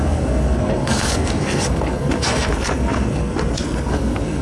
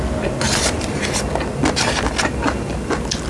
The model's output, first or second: first